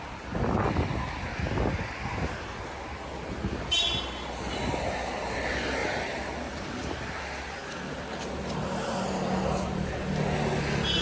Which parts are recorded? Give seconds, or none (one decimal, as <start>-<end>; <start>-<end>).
0.0-11.0